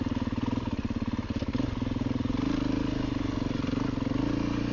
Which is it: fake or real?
real